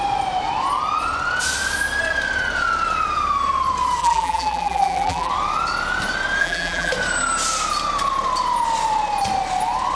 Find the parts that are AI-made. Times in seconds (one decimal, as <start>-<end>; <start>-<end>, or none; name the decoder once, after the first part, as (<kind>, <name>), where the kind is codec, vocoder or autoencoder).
4.0-5.3 (vocoder, BigVGAN v2); 6.4-6.9